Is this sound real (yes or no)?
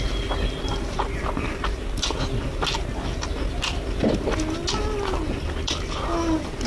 yes